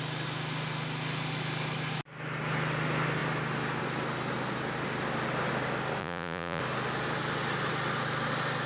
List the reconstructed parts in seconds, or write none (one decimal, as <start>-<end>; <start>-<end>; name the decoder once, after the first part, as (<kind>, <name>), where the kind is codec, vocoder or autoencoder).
6.0-6.6 (vocoder, Vocos)